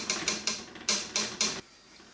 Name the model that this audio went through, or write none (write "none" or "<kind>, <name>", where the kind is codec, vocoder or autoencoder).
vocoder, BigVGAN v2